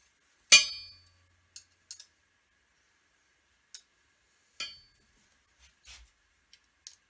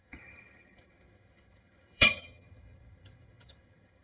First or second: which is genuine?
first